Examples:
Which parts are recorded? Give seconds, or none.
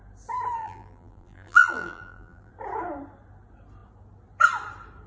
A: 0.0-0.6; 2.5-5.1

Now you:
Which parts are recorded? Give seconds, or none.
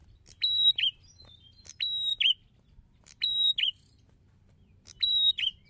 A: 1.2-2.1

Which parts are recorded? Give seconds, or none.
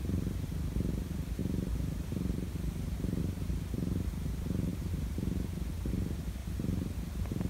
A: 1.4-3.2; 4.7-5.9; 6.4-7.5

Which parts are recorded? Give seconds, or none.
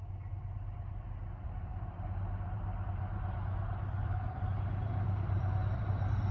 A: none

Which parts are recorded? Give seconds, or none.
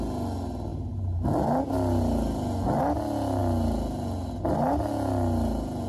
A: 0.0-5.9